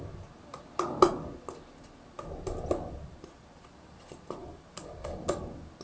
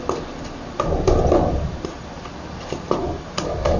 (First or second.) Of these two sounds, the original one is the first